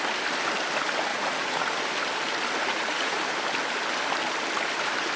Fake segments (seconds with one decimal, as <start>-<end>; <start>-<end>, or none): 1.1-1.7; 2.7-3.2